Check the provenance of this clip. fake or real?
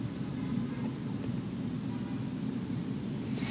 real